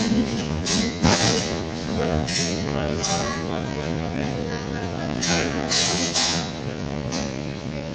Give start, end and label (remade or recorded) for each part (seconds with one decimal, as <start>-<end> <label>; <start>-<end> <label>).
0.0-7.9 remade

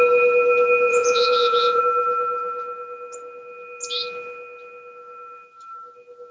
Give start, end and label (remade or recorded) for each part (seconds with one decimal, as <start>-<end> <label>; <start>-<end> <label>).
0.0-0.9 recorded; 0.9-1.8 remade; 1.8-6.3 recorded

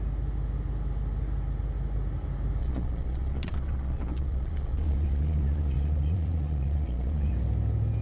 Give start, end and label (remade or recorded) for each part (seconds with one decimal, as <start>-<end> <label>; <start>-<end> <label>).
0.0-2.6 recorded; 2.6-7.3 remade; 7.3-8.0 recorded

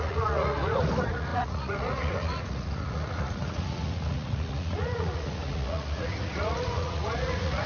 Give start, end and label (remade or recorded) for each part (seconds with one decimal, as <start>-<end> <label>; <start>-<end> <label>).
0.0-7.7 remade

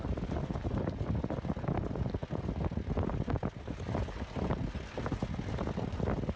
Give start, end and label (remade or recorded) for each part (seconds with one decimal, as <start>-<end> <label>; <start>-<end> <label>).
0.0-6.4 recorded